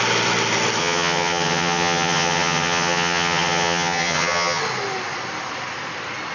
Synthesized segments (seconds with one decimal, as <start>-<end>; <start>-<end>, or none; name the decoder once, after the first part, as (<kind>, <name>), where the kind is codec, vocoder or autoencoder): 0.8-4.6 (vocoder, HiFi-GAN)

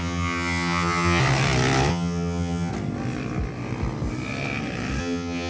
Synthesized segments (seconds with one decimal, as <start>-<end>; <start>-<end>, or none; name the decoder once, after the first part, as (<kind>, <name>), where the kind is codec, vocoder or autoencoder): 0.0-1.2 (vocoder, HiFi-GAN); 1.9-2.7; 5.0-5.5

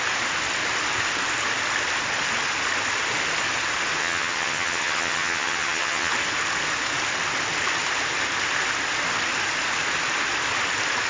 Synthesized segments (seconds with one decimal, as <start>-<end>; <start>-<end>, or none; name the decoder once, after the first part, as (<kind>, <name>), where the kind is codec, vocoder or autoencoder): 4.0-6.1 (vocoder, HiFi-GAN)

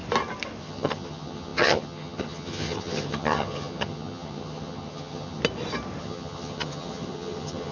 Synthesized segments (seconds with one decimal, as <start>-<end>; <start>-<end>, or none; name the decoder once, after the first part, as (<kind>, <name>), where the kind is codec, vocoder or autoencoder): 0.6-5.4 (vocoder, HiFi-GAN); 6.0-7.7

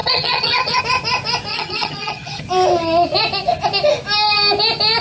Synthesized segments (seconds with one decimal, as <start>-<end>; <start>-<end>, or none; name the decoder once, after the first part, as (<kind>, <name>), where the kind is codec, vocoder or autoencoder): 0.0-0.8 (vocoder, HiFi-GAN); 1.5-2.4

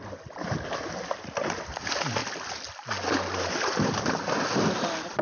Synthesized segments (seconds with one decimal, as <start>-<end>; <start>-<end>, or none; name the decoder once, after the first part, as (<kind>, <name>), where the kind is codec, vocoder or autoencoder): none

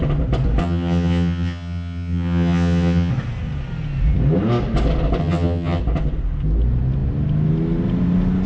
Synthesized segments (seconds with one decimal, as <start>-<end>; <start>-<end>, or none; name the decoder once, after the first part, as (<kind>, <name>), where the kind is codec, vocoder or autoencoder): 0.6-3.1 (vocoder, HiFi-GAN); 5.2-5.8

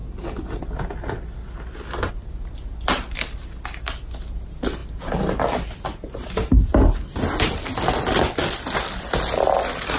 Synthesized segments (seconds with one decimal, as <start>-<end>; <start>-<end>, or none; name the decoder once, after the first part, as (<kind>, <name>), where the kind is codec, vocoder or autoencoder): none